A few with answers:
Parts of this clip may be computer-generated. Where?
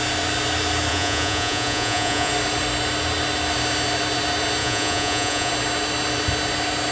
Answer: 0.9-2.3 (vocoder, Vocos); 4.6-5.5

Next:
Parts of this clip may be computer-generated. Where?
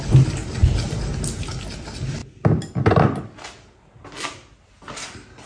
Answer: none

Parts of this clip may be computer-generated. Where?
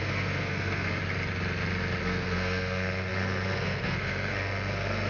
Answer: 0.0-1.0 (codec, SNAC); 2.0-5.1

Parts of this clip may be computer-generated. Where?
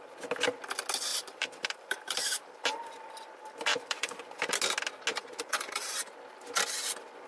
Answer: 1.1-3.3 (vocoder, BigVGAN v2); 3.7-4.6; 5.1-6.1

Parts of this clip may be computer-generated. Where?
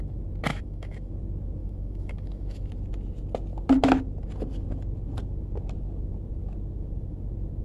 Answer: 0.5-1.1 (autoencoder, DAC-VAE); 1.6-2.7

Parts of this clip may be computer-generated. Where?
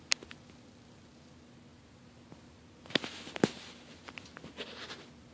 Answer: none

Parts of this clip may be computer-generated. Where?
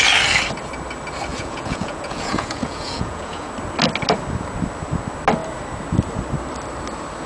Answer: 1.3-3.5 (vocoder, Vocos)